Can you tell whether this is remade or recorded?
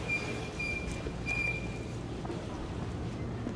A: recorded